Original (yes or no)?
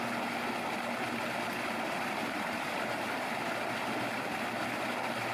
yes